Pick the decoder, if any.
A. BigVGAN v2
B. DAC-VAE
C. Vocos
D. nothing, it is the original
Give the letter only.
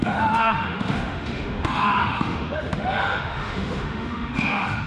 B